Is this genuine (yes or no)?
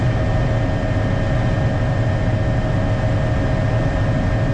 yes